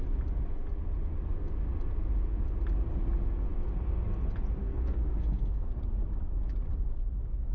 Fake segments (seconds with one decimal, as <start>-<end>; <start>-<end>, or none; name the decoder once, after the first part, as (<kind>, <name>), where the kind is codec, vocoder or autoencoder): 4.6-5.7 (codec, SNAC)